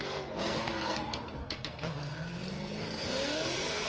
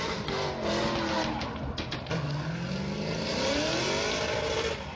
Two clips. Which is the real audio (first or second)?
second